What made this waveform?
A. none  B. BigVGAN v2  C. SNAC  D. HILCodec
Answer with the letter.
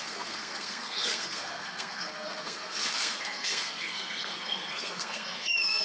C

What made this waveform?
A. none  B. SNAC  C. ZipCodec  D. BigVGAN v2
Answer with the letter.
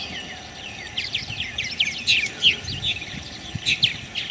A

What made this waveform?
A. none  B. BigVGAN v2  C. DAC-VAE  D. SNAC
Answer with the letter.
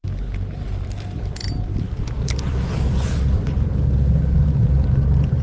B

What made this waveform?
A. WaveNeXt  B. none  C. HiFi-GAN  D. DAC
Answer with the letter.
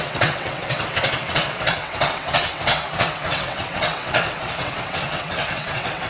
A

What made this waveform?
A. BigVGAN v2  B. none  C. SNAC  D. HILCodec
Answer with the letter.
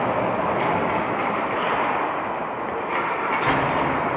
B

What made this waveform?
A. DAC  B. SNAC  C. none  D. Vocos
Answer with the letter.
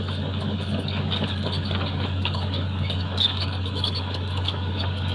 A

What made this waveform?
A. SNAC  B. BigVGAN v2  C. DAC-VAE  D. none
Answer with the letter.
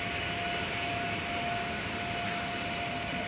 D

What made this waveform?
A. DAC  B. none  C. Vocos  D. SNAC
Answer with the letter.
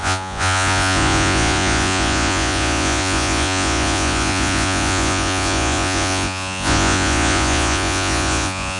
C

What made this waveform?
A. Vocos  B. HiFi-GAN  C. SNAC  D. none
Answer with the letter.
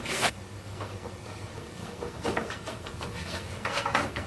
C